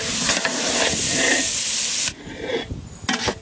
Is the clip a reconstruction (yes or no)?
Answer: no